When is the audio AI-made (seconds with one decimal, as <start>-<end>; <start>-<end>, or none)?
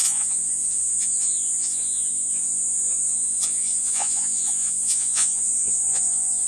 0.0-6.5